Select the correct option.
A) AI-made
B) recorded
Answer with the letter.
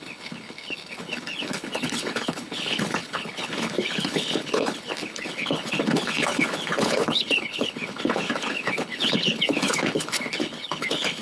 A